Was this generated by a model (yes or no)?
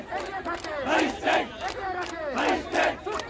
no